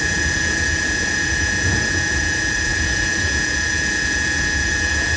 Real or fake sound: fake